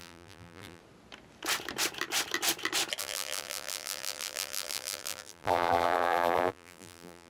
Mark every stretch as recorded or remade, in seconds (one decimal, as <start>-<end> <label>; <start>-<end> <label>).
0.0-0.8 remade; 0.8-3.0 recorded; 3.0-7.3 remade